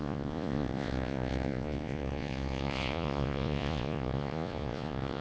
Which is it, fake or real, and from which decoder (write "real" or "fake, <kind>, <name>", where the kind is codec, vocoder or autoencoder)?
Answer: fake, vocoder, Vocos